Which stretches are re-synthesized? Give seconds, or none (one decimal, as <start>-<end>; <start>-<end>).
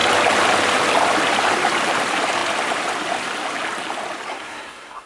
4.3-5.1